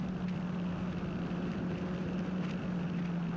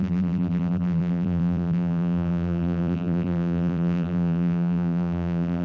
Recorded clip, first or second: first